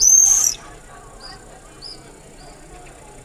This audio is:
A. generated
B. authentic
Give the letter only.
B